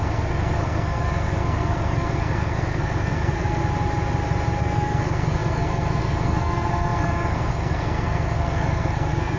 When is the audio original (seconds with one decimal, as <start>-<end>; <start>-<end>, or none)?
3.6-4.6